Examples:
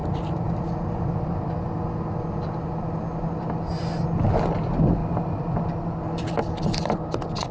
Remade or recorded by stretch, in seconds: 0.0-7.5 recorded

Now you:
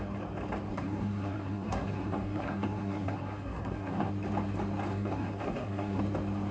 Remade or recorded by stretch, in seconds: 0.0-0.7 recorded; 0.7-4.1 remade; 4.1-4.9 recorded; 4.9-6.0 remade; 6.0-6.5 recorded

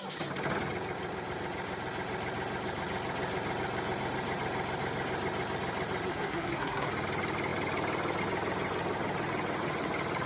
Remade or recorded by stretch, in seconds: 0.0-6.1 recorded; 6.1-6.9 remade; 6.9-10.3 recorded

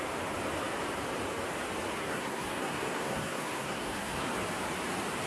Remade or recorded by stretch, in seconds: 0.0-2.0 recorded; 2.0-4.3 remade; 4.3-5.3 recorded

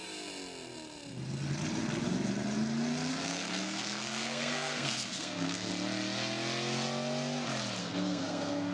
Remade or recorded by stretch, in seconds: 0.0-3.1 recorded; 3.1-5.7 remade; 5.7-7.8 recorded; 7.8-8.7 remade

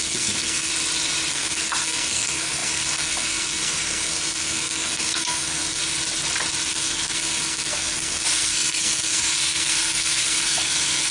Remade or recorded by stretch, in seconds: 0.0-0.7 remade; 0.7-1.3 recorded; 1.3-5.8 remade; 5.8-6.7 recorded; 6.7-11.1 remade

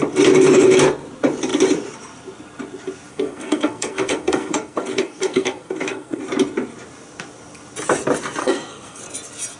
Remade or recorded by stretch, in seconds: 0.0-3.1 recorded; 3.1-6.2 remade; 6.2-8.4 recorded; 8.4-9.0 remade; 9.0-9.6 recorded